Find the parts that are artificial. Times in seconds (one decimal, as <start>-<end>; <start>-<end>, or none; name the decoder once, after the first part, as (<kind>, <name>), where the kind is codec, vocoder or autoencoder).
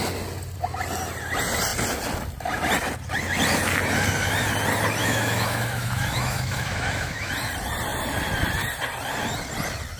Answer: 5.0-7.3 (autoencoder, DAC-VAE)